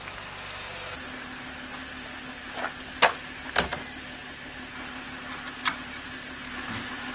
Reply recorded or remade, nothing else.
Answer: recorded